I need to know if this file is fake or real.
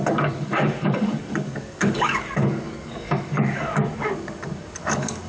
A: fake